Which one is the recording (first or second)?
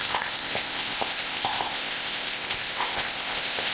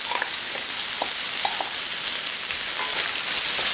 second